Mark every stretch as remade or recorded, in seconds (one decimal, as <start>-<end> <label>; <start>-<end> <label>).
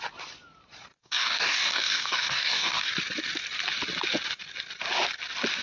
0.0-1.0 recorded; 1.0-2.9 remade; 2.9-5.6 recorded